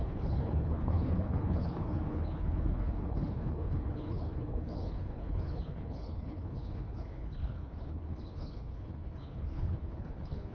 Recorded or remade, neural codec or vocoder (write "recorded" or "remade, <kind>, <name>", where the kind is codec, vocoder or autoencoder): remade, codec, HILCodec